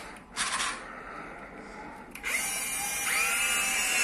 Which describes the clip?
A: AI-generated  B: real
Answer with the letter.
B